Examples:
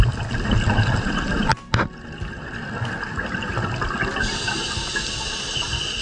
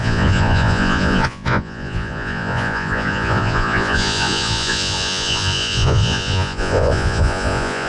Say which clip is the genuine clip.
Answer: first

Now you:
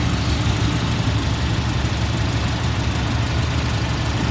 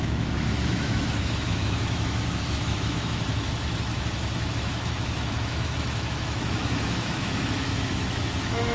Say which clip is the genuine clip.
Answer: first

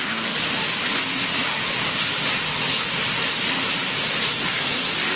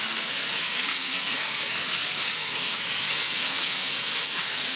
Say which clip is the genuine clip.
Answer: first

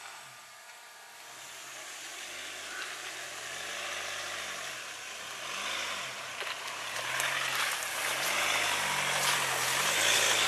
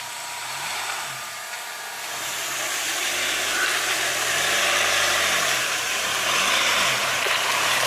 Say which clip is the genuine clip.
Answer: first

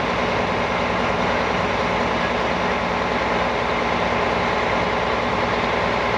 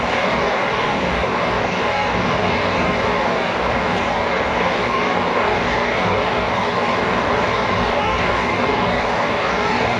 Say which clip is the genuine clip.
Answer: first